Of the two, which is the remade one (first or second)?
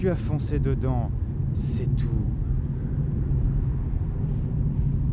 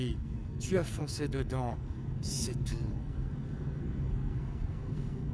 second